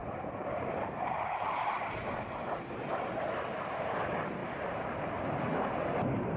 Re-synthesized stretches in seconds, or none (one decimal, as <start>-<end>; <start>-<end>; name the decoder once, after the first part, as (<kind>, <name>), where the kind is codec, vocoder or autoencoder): 0.0-3.8 (vocoder, BigVGAN v2); 4.4-5.1